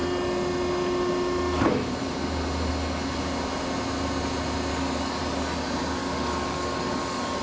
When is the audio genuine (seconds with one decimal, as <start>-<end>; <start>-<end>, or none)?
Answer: 0.0-4.7; 5.2-6.0